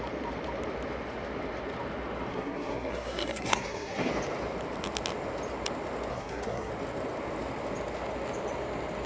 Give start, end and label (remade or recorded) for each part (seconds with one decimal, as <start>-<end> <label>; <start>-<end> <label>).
0.0-2.3 recorded; 2.3-4.1 remade; 4.1-6.1 recorded; 6.1-6.7 remade; 6.7-9.1 recorded